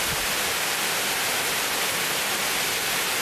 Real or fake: real